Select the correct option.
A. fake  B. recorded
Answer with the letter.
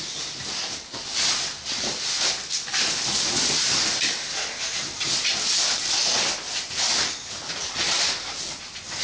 B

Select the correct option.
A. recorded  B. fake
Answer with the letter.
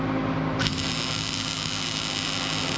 A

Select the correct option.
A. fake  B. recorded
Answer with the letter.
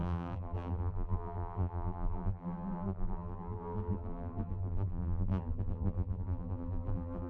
A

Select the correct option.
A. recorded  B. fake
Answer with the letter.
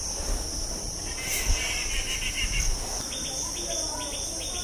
A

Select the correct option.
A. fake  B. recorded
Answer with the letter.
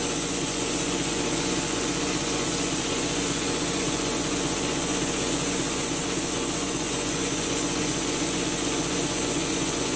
A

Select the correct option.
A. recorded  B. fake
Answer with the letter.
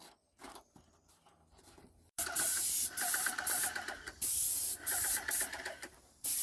B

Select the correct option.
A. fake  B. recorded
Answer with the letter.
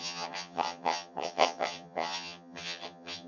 A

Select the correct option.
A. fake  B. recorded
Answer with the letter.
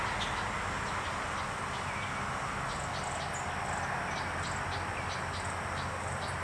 B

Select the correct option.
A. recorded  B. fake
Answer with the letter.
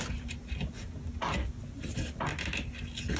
A